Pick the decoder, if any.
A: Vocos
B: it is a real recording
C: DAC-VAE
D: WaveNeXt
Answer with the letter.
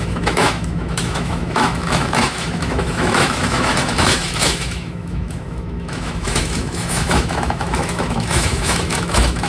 C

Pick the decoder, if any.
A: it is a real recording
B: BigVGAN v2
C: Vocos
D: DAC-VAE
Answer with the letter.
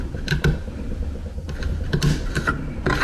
A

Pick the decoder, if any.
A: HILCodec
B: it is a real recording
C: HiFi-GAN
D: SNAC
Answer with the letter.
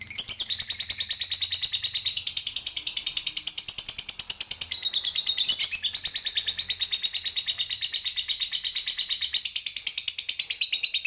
B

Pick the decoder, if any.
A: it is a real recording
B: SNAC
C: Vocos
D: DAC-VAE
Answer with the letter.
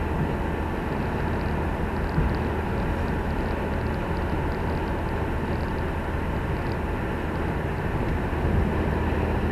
A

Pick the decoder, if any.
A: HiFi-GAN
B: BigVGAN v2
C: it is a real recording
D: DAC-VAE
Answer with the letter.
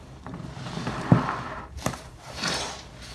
B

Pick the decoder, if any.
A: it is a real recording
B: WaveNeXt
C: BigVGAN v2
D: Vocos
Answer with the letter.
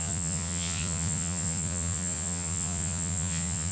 D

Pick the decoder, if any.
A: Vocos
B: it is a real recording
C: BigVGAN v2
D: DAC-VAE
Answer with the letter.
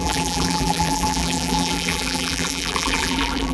C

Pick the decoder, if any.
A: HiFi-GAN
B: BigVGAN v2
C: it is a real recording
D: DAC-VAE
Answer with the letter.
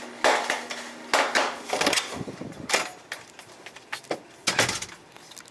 C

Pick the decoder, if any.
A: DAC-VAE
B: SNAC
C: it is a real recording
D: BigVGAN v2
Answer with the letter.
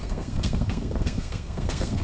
B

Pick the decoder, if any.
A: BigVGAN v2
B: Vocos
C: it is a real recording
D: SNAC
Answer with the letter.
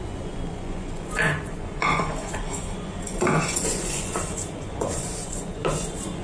B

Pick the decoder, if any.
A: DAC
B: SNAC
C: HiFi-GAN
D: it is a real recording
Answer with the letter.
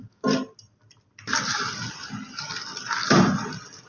D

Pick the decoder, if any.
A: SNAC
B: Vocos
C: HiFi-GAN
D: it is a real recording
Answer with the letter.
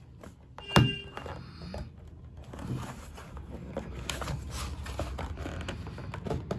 D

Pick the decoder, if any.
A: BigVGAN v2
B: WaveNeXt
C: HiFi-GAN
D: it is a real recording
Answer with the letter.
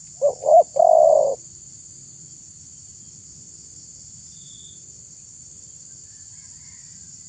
D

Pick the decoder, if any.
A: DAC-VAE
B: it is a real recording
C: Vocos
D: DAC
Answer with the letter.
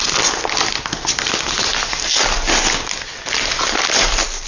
B